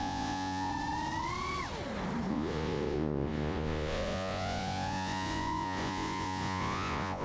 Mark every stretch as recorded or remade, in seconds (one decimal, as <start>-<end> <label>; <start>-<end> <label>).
0.0-0.7 remade; 0.7-2.3 recorded; 2.3-7.2 remade